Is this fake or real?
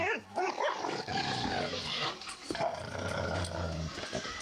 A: fake